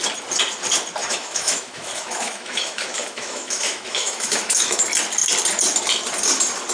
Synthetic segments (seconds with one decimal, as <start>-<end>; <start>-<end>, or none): 1.0-4.8

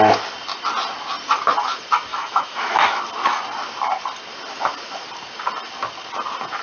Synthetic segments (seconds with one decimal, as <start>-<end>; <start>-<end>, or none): 2.1-3.0

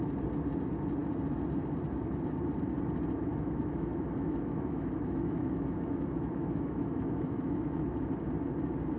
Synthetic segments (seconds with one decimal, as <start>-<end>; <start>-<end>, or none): 3.3-8.1

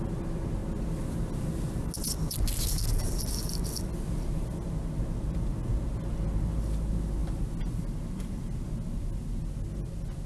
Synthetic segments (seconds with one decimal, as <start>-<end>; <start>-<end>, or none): none

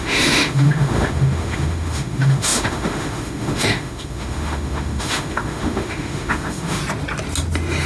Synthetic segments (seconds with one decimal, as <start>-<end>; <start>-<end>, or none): 0.0-6.8

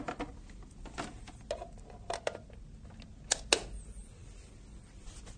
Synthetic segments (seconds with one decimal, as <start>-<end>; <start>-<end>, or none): none

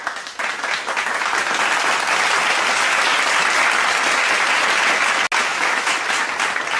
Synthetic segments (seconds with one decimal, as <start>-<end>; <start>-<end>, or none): 5.5-6.0

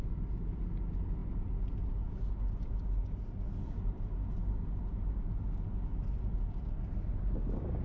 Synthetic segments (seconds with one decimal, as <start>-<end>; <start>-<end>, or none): none